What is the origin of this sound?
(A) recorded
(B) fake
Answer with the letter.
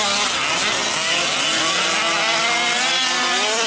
A